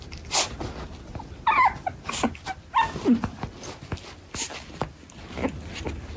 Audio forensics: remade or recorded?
recorded